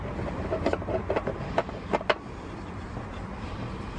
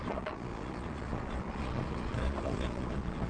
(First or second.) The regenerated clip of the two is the second